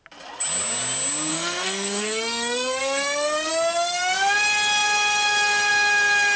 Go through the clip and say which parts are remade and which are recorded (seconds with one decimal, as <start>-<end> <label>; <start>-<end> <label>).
0.0-1.3 recorded; 1.3-3.5 remade; 3.5-6.4 recorded